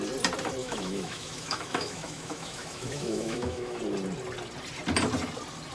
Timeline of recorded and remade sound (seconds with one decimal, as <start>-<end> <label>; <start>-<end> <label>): 0.0-0.6 recorded; 0.6-3.8 remade; 3.8-5.7 recorded